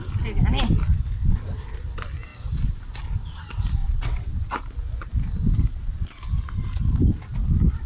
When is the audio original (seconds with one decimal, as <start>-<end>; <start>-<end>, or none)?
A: 0.0-3.8; 4.4-7.9